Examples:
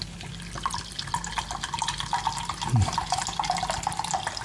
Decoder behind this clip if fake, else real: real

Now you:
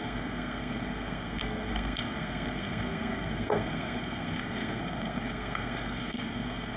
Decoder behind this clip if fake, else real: fake, codec, SNAC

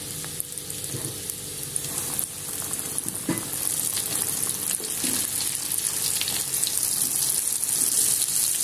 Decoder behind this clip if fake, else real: real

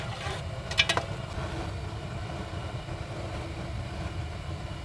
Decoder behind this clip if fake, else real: real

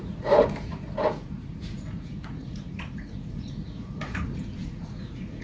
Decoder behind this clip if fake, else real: fake, vocoder, Vocos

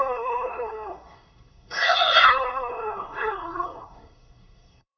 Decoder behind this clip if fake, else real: fake, codec, SNAC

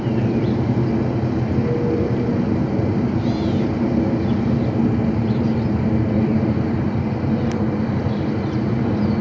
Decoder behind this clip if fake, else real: real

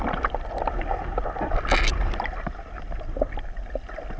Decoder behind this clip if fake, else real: real